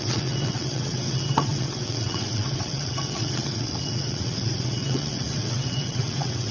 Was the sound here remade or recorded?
remade